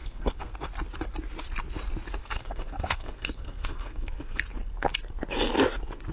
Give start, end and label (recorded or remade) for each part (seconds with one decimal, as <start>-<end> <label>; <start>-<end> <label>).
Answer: 0.0-0.6 remade; 0.6-2.2 recorded; 2.2-4.4 remade; 4.4-6.1 recorded